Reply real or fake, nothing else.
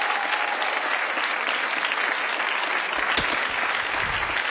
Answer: real